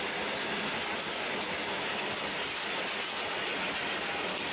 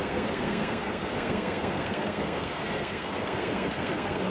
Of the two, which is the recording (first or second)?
first